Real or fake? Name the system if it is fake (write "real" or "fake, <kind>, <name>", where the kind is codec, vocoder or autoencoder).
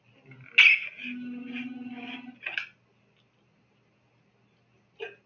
real